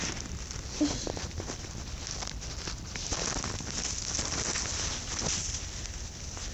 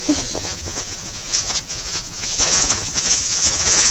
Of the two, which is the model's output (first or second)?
second